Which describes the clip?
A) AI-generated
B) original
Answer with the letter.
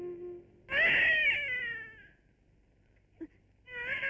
B